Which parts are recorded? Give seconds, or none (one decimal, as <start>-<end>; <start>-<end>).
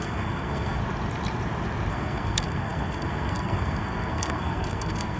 0.8-1.9